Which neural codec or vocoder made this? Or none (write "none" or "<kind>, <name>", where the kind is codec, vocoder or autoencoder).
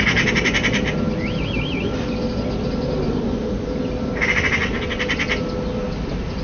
none